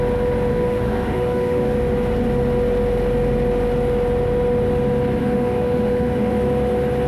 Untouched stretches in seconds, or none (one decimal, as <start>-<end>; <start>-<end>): 0.0-0.5; 1.7-5.2; 6.3-7.1